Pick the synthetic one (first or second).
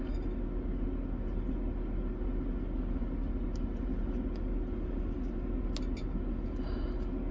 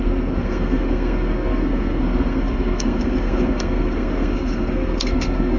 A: second